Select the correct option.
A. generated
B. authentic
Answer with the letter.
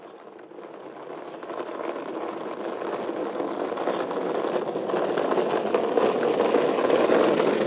B